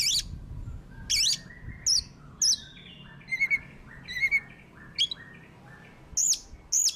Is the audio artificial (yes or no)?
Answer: no